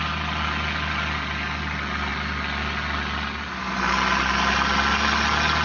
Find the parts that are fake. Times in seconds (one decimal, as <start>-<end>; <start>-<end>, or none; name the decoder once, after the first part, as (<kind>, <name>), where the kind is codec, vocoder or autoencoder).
none

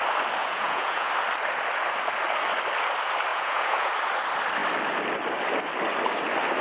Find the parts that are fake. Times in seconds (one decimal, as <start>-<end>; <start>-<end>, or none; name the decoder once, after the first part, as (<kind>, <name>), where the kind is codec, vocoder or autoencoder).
0.4-1.1 (vocoder, Vocos); 3.3-3.9

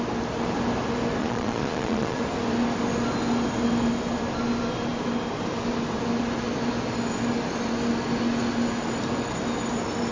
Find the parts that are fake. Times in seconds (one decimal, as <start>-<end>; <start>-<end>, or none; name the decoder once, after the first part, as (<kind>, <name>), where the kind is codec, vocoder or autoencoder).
1.2-2.2 (vocoder, Vocos)

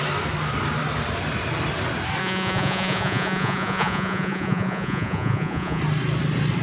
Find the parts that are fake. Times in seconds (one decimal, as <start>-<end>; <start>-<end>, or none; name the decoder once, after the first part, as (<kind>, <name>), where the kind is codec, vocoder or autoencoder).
2.2-5.8 (vocoder, Vocos)

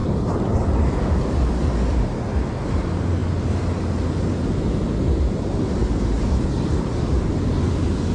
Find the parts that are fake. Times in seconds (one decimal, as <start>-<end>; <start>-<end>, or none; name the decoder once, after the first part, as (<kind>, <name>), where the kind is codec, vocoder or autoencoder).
none